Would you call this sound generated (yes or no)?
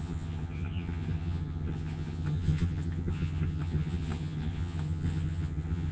yes